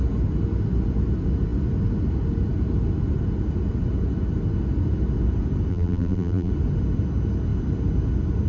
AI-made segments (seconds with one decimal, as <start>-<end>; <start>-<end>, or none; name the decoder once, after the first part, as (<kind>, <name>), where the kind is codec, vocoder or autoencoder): 5.7-6.5 (vocoder, BigVGAN v2)

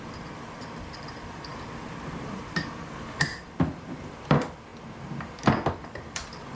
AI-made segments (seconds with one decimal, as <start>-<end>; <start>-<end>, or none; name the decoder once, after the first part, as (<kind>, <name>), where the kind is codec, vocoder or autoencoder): 0.0-4.7 (vocoder, BigVGAN v2); 5.7-6.6

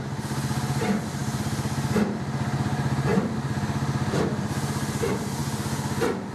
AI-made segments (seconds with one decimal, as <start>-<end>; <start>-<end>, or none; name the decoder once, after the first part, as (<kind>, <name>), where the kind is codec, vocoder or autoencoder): none

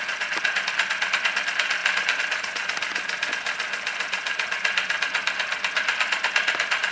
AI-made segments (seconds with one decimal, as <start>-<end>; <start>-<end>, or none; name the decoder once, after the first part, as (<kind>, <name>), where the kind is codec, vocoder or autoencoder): none

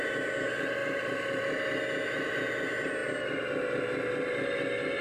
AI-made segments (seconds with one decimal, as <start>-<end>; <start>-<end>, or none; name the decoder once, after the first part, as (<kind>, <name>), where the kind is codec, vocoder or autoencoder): 0.8-1.4 (vocoder, BigVGAN v2)

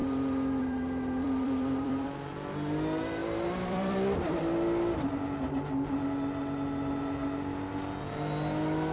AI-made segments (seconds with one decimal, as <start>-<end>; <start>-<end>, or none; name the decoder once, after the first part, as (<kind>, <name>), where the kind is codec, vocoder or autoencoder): 0.0-2.1 (vocoder, BigVGAN v2); 3.2-4.4

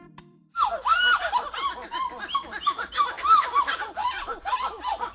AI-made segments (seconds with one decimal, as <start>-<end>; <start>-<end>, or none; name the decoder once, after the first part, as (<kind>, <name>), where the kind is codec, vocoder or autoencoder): 0.0-4.0 (vocoder, BigVGAN v2); 4.5-5.1

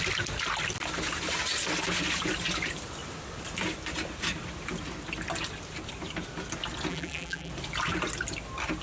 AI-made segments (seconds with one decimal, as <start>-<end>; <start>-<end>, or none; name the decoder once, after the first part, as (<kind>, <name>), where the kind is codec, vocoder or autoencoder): 6.9-7.5 (vocoder, BigVGAN v2)